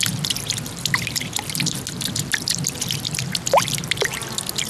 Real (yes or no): yes